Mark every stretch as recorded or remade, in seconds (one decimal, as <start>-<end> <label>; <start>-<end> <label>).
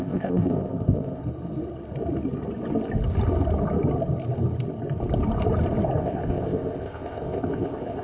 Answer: 0.0-1.2 remade; 1.2-6.0 recorded; 6.0-8.0 remade